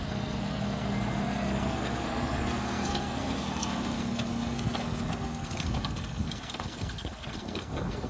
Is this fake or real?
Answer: fake